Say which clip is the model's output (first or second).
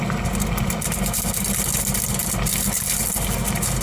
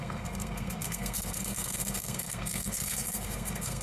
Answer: second